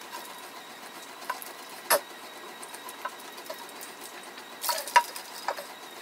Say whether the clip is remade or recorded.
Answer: recorded